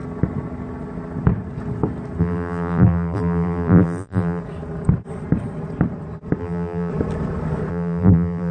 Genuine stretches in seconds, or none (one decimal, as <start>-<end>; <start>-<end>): 0.0-2.2; 4.4-6.4; 6.9-7.7